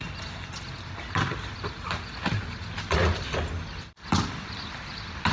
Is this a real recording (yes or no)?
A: yes